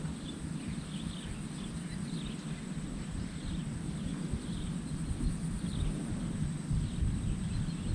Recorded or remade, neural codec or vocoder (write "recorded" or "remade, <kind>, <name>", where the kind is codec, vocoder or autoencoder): recorded